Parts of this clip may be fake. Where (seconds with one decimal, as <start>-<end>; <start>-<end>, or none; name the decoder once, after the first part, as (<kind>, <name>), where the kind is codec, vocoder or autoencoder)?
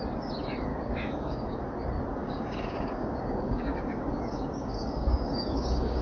0.7-1.6 (codec, DAC); 2.2-6.0